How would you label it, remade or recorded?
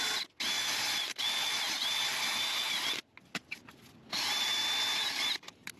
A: recorded